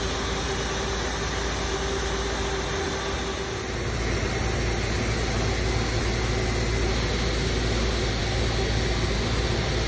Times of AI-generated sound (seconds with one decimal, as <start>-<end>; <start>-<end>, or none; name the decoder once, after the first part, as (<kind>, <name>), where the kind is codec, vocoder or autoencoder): none